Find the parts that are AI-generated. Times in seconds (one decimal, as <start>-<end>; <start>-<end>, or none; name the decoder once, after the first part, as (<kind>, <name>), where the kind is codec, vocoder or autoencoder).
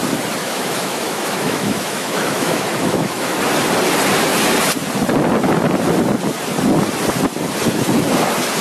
0.4-3.4 (autoencoder, DAC-VAE)